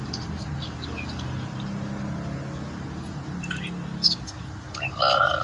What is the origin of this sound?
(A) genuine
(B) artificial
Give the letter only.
A